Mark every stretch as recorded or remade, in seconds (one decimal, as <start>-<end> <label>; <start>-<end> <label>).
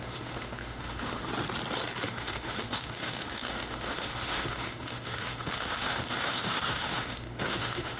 0.0-1.3 remade; 1.3-2.1 recorded; 2.1-8.0 remade